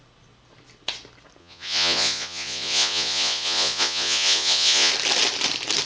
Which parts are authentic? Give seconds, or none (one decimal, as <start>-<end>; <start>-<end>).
0.0-1.4; 4.9-5.9